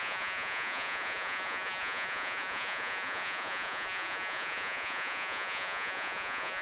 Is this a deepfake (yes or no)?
yes